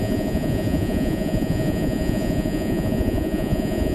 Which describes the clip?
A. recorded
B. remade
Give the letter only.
B